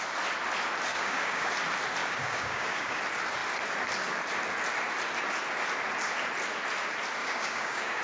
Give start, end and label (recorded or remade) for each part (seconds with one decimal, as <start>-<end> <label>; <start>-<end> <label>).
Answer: 0.0-0.9 recorded; 0.9-1.5 remade; 1.5-2.0 recorded; 2.0-3.0 remade; 3.0-7.2 recorded; 7.2-8.0 remade